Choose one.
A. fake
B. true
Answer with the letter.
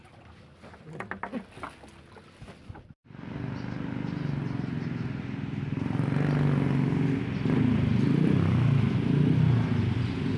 B